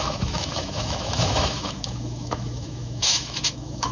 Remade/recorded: remade